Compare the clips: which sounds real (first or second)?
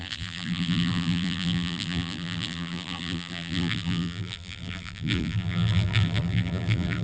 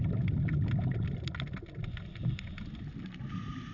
second